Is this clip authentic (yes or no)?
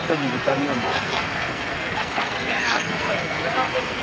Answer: no